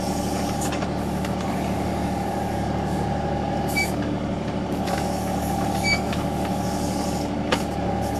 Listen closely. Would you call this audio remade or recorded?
remade